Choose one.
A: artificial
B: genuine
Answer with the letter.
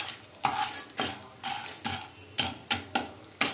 B